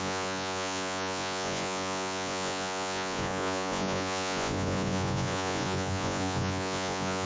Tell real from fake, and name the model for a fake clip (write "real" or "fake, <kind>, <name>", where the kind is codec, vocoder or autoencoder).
fake, vocoder, Vocos